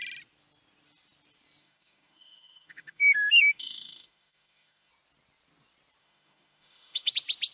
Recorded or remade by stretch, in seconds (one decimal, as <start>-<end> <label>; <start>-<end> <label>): 0.0-1.6 recorded; 1.6-4.9 remade; 4.9-6.0 recorded; 6.0-7.1 remade; 7.1-7.5 recorded